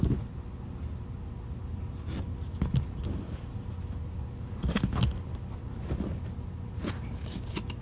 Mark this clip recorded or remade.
recorded